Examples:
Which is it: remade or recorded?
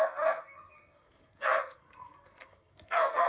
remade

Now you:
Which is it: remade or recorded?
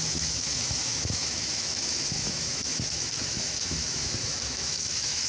remade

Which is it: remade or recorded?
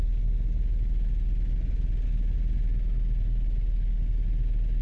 recorded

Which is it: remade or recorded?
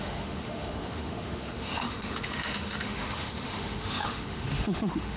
remade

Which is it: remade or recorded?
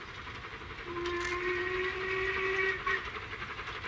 recorded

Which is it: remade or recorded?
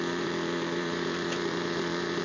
remade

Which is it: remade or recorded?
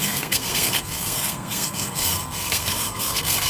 remade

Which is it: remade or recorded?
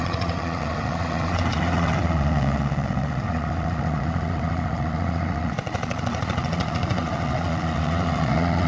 remade